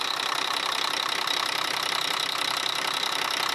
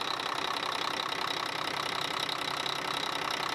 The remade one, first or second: first